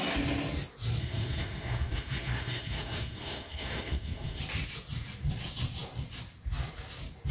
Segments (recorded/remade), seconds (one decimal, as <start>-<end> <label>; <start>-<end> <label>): 0.0-1.0 recorded; 1.0-4.4 remade; 4.4-7.3 recorded